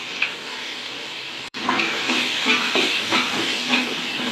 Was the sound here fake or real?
fake